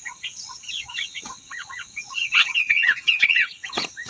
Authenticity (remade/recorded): remade